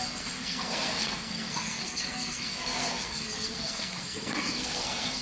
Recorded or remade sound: remade